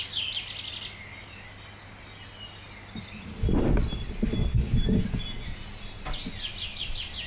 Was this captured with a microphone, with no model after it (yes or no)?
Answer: yes